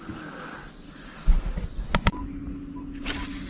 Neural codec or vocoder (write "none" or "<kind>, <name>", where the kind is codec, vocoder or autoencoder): none